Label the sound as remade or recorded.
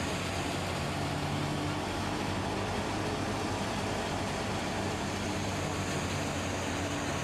recorded